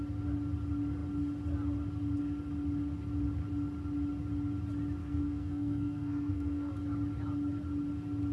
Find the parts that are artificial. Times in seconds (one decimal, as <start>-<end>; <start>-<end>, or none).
5.0-6.7